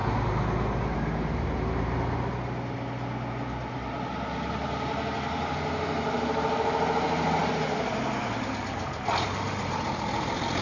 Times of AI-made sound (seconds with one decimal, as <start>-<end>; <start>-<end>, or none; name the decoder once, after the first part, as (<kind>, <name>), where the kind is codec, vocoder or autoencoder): none